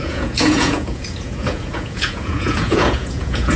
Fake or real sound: fake